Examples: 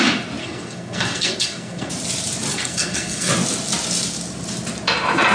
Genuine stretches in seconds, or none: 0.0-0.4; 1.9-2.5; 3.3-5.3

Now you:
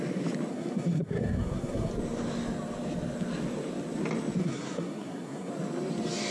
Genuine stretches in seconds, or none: 0.0-0.5; 1.9-4.4; 5.5-6.3

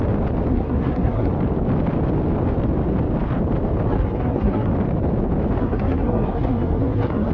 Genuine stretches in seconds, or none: 0.0-0.5; 1.3-3.9; 4.7-5.6

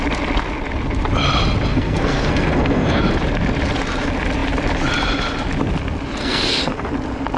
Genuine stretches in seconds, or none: 0.0-1.7; 3.0-6.2; 6.9-7.4

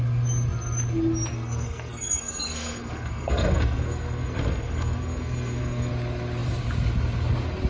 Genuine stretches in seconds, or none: 0.0-1.3; 5.9-7.7

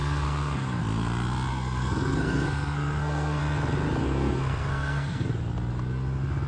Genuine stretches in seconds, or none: 0.8-1.5; 3.4-4.0; 5.3-6.5